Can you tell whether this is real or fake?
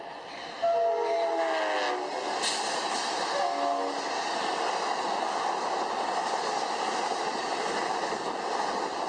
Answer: real